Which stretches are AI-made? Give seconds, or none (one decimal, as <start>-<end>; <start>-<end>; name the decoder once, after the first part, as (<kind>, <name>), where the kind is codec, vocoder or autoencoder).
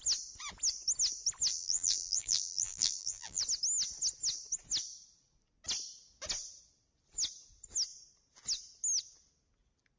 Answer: 1.5-3.4 (vocoder, BigVGAN v2)